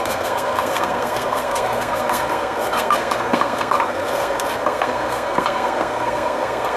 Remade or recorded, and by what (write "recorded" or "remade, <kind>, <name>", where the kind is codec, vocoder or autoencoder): remade, codec, SNAC